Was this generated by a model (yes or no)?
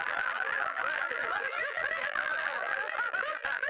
yes